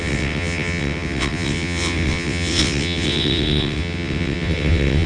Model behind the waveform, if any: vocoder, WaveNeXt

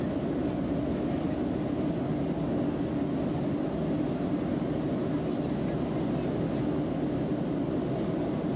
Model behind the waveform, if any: none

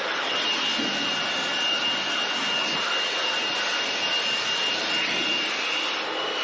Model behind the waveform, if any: none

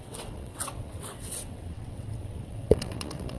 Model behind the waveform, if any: vocoder, WaveNeXt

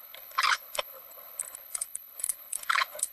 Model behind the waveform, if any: codec, HILCodec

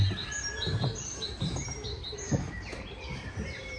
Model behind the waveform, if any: none